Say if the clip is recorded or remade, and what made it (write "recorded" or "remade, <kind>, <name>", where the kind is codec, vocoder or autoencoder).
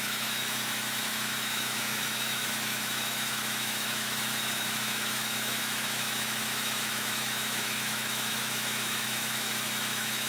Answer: remade, autoencoder, DAC-VAE